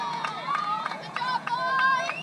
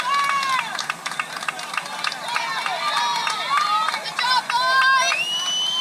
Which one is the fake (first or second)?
first